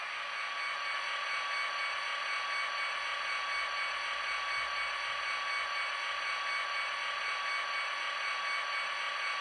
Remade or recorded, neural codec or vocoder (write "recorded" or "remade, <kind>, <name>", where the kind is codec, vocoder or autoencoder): recorded